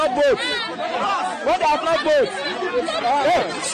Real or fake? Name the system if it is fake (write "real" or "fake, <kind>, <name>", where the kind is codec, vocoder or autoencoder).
real